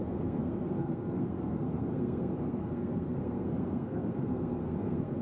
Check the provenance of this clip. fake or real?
fake